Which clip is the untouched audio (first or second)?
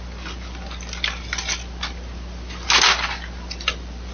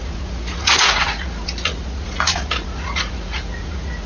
first